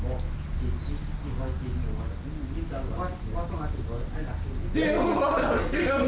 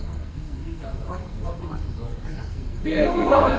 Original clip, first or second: first